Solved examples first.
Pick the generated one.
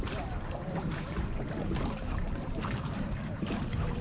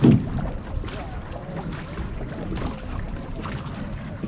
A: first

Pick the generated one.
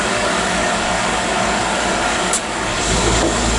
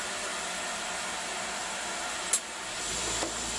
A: first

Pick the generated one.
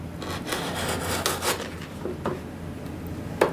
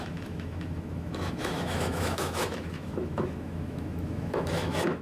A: second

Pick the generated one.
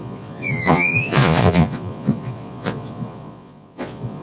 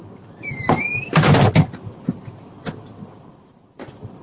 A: first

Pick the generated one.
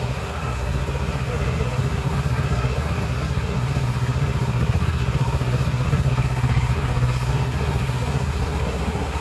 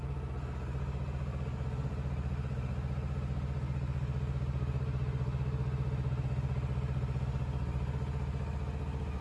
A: first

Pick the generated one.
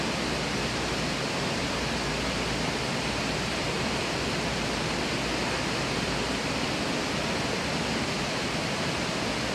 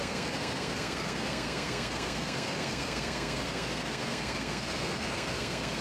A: second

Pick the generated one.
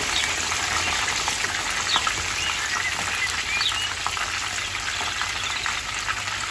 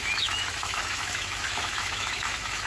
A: second